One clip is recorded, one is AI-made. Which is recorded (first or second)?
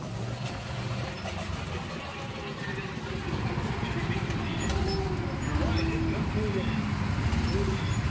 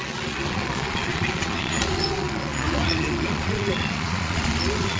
first